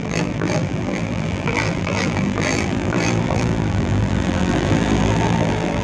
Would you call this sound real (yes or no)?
no